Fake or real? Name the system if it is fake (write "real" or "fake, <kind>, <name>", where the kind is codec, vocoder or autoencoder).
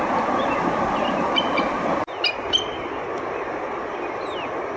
real